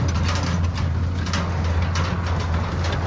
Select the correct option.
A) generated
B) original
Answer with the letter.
B